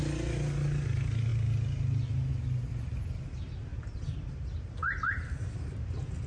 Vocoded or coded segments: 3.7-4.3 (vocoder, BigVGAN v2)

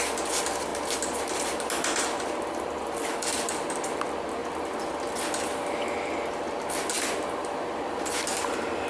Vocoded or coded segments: 0.7-3.5 (vocoder, BigVGAN v2); 7.4-8.9

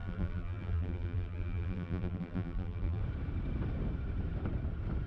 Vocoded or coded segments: 0.0-3.0 (vocoder, BigVGAN v2)

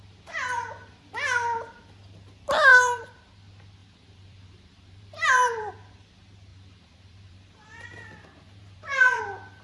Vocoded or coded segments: 2.7-3.3 (vocoder, BigVGAN v2); 3.8-5.7; 6.5-9.2

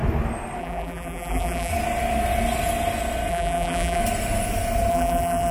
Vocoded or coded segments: 0.6-1.7 (vocoder, BigVGAN v2); 3.3-4.0; 4.9-5.5

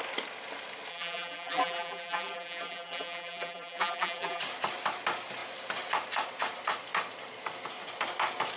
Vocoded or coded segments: 0.9-4.4 (vocoder, BigVGAN v2)